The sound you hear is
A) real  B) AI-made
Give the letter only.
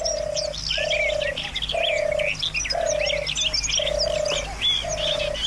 A